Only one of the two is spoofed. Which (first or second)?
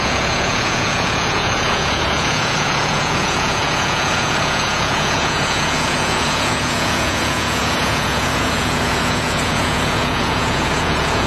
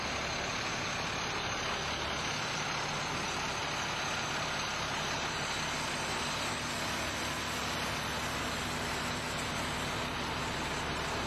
first